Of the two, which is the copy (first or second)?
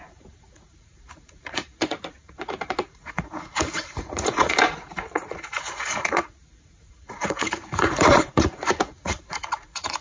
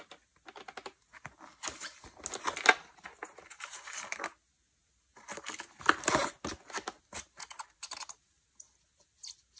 first